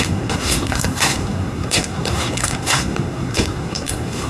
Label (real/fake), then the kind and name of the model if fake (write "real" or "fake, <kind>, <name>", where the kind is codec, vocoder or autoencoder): fake, codec, SNAC